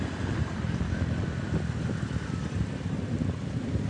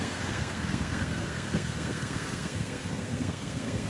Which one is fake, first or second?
second